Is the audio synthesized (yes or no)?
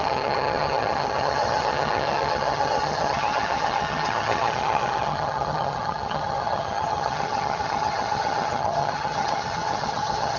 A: yes